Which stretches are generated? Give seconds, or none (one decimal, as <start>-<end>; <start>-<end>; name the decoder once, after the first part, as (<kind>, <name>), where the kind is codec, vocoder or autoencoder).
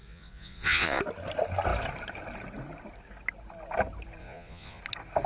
0.0-1.0 (vocoder, Vocos); 4.2-4.8